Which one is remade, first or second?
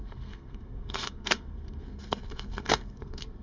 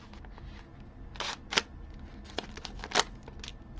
first